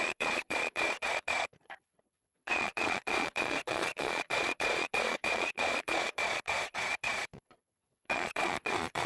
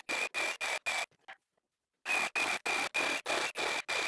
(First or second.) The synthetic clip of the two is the first